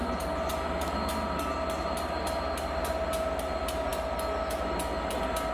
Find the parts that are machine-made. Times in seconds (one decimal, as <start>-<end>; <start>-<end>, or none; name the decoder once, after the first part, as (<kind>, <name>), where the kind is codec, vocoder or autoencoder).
none